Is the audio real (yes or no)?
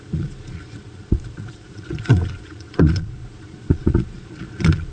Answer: no